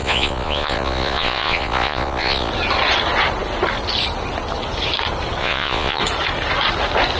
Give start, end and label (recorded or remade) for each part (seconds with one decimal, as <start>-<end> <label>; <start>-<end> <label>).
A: 0.0-2.5 remade; 2.5-5.4 recorded; 5.4-6.0 remade; 6.0-7.2 recorded